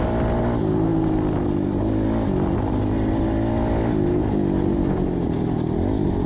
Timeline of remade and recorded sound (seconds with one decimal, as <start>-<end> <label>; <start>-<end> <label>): 0.0-6.3 recorded